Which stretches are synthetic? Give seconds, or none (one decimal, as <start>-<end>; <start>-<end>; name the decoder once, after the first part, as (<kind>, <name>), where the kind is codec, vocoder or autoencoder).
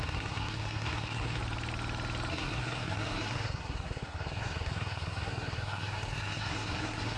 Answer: 0.0-1.4 (codec, SNAC); 2.3-7.2